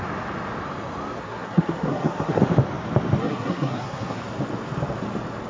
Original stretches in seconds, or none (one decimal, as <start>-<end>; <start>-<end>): 0.0-1.2; 2.4-3.2; 4.2-5.5